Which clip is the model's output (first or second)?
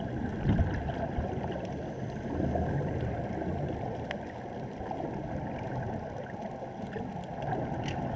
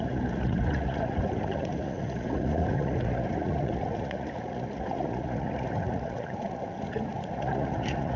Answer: second